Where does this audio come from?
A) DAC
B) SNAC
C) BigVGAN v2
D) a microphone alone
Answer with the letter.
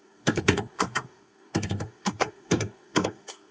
B